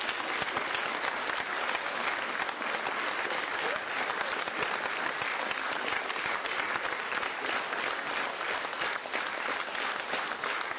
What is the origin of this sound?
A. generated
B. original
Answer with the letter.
B